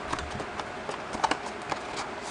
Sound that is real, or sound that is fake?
real